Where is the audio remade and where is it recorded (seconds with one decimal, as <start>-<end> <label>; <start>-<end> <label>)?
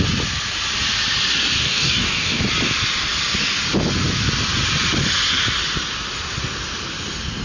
0.0-1.6 recorded; 1.6-2.4 remade; 2.4-7.4 recorded